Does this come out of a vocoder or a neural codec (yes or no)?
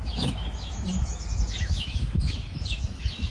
yes